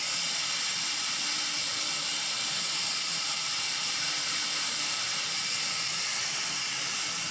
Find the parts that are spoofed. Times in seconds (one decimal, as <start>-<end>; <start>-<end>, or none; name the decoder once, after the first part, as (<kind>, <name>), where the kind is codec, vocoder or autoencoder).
none